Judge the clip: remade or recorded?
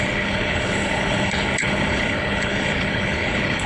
remade